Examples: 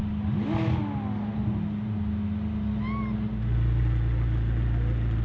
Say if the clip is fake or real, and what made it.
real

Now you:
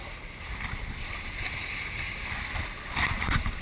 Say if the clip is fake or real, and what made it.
real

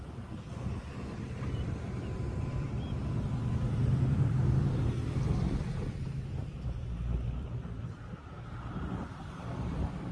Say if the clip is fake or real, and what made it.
fake, vocoder, BigVGAN v2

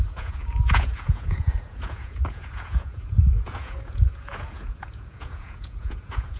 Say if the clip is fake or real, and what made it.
fake, vocoder, Vocos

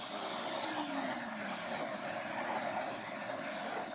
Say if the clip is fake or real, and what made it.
real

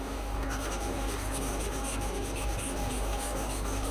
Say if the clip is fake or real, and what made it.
fake, codec, DAC